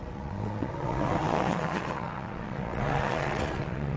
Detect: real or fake fake